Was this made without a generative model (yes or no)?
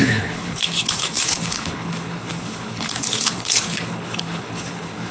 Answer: no